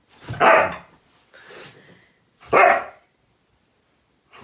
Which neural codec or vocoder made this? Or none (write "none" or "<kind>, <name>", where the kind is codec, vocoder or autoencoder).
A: none